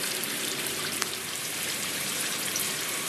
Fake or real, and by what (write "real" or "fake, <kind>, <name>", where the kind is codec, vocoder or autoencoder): fake, vocoder, BigVGAN v2